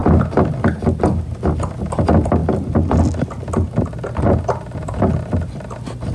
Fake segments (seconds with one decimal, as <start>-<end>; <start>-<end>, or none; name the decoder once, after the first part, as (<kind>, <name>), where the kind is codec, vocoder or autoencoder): none